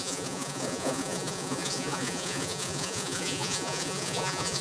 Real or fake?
fake